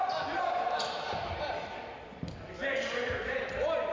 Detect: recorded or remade recorded